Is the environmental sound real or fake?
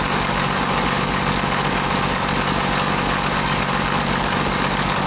fake